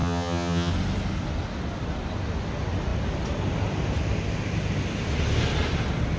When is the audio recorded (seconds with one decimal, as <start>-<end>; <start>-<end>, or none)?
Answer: 0.7-6.2